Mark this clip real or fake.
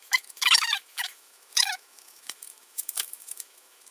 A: fake